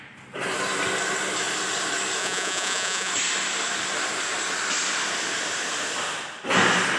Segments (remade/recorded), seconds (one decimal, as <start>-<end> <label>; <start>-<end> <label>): 0.0-2.2 recorded; 2.2-3.1 remade; 3.1-7.0 recorded